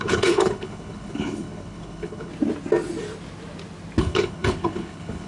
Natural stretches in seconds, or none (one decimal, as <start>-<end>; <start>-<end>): 2.3-4.0